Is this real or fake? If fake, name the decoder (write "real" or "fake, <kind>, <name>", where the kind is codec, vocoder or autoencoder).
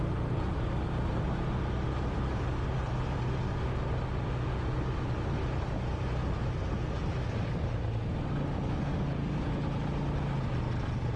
real